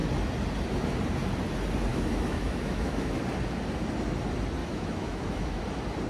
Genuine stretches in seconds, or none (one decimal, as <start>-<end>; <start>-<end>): 0.0-1.9; 3.2-4.6; 5.6-6.1